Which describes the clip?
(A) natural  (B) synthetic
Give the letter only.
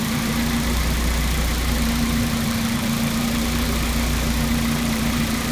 B